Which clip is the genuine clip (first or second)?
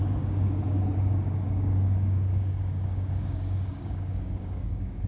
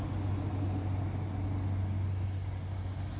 second